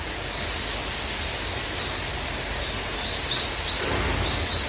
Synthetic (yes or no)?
no